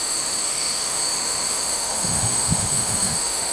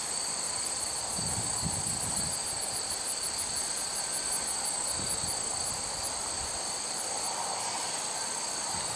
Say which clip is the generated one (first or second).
first